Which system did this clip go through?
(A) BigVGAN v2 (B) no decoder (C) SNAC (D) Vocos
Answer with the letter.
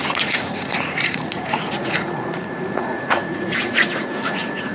D